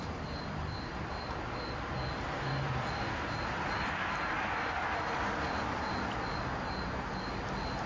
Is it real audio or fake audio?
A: real